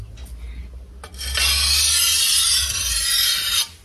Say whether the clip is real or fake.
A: real